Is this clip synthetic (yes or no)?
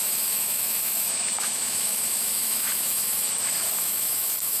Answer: yes